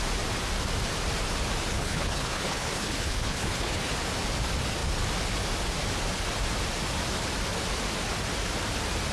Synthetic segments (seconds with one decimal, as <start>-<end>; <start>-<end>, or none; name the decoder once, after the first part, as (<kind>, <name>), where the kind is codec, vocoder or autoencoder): 1.7-3.9 (codec, HILCodec)